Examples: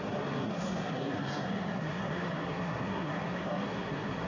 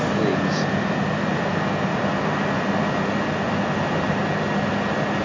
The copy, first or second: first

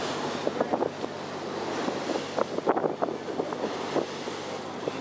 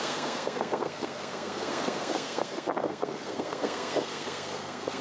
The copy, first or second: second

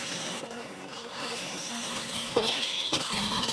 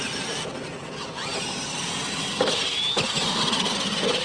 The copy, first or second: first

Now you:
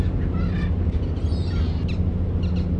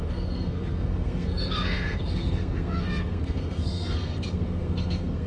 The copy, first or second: second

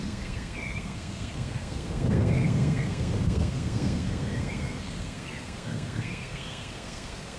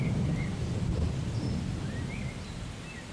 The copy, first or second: first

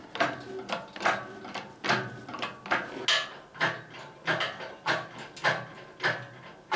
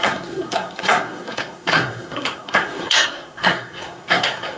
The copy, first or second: second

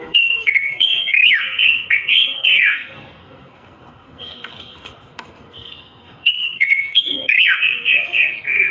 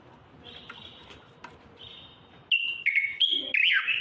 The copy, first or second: first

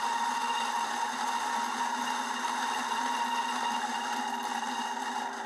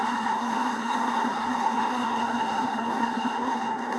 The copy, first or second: second